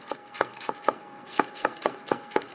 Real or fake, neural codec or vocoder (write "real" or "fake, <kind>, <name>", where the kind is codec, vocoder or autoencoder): fake, codec, SNAC